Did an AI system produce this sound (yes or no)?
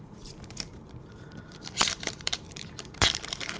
yes